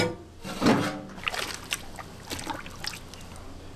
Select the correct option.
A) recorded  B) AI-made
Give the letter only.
A